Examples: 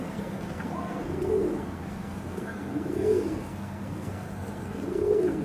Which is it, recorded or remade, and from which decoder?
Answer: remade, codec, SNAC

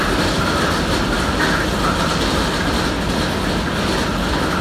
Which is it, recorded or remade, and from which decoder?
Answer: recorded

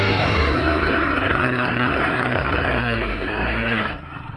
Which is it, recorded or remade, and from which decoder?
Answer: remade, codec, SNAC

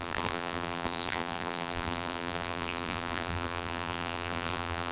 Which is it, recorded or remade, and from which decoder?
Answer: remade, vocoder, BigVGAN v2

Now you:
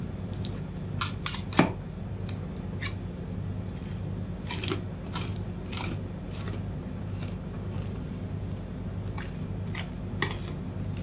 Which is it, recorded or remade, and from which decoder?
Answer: recorded